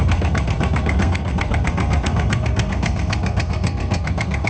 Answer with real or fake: fake